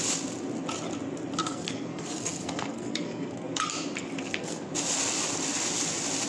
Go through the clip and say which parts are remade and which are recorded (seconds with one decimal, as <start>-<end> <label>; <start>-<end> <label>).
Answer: 0.0-1.4 recorded; 1.4-3.7 remade; 3.7-4.2 recorded; 4.2-4.7 remade; 4.7-6.3 recorded